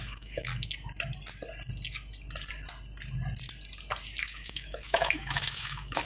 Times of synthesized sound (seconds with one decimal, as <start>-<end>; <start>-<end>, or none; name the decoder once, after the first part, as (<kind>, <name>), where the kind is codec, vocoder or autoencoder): 0.0-0.5 (autoencoder, DAC-VAE); 4.2-6.1